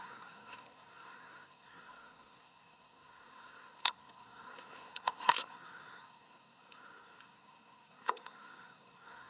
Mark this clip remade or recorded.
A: remade